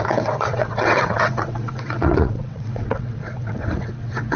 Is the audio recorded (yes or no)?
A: no